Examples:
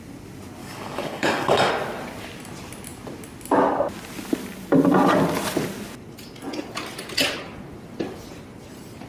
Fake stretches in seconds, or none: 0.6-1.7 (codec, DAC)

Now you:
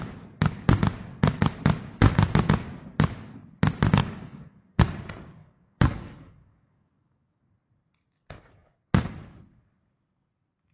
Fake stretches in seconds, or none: 4.0-4.8 (codec, DAC); 5.4-7.4

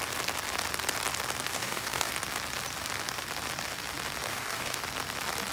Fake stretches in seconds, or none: 1.5-2.1 (codec, DAC); 4.3-4.8

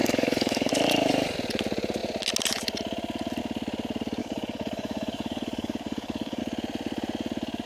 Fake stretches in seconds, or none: 0.0-0.7 (codec, DAC); 4.2-6.4

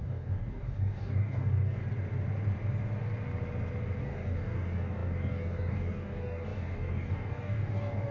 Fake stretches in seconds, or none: 0.0-1.8 (codec, DAC); 4.0-8.1

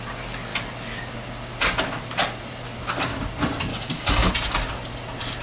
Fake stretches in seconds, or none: 3.7-4.3 (codec, DAC)

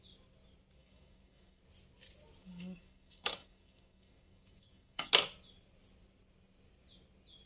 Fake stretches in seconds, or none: 0.8-1.6 (codec, DAC); 2.4-5.1

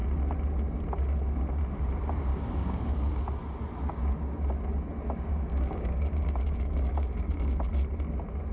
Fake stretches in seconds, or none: 2.3-3.0 (codec, DAC); 5.3-7.7